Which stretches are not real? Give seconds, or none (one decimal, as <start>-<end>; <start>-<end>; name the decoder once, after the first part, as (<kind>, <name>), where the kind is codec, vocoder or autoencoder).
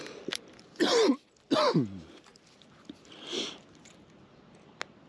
none